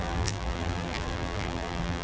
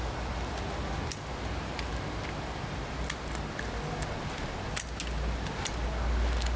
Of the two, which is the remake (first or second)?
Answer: first